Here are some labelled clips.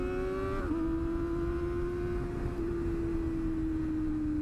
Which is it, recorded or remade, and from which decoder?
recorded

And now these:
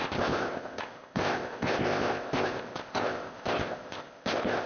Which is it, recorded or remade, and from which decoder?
remade, codec, ZipCodec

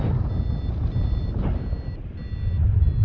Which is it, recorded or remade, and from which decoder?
recorded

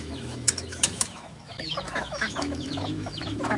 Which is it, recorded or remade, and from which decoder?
remade, autoencoder, DAC-VAE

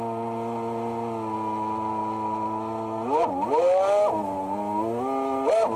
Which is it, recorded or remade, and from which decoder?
recorded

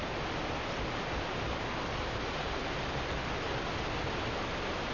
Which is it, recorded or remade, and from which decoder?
recorded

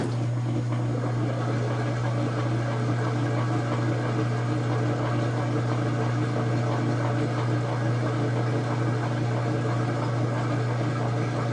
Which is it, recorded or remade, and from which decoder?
recorded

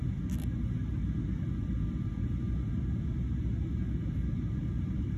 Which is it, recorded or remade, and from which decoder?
recorded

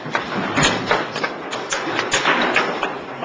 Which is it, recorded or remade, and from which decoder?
recorded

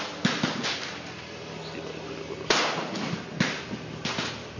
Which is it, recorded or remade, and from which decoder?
recorded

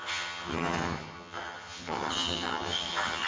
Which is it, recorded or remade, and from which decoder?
remade, vocoder, HiFi-GAN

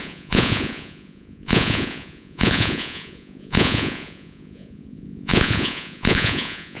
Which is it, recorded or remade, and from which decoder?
remade, vocoder, Vocos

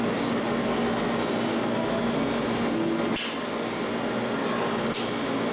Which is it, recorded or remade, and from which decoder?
recorded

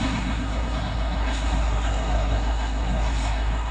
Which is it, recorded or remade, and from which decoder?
remade, codec, SNAC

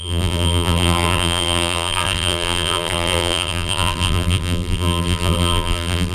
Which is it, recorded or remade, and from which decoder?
remade, vocoder, BigVGAN v2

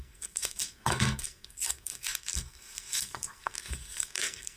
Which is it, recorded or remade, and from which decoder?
remade, codec, SNAC